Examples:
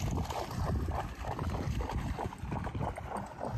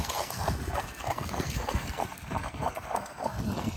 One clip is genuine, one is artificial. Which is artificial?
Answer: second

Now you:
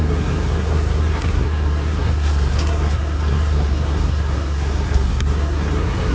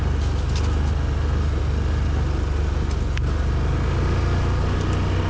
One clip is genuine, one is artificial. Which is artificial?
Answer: first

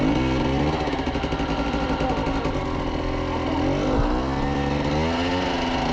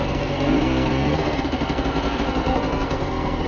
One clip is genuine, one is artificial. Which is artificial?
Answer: second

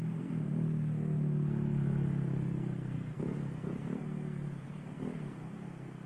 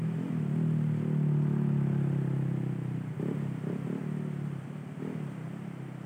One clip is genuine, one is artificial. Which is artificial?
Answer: first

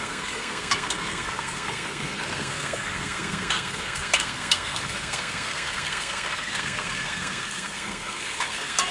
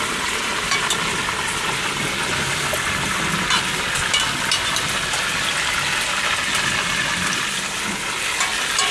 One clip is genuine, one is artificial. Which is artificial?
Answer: first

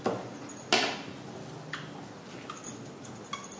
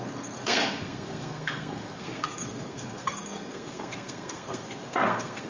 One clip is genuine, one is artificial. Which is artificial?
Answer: second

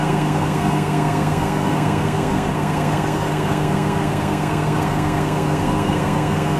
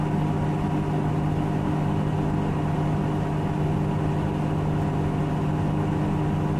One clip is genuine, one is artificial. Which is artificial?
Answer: first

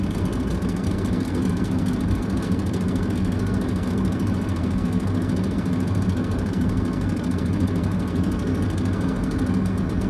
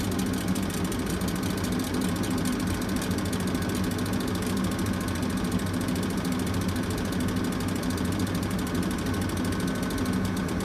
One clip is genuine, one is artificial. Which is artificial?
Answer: first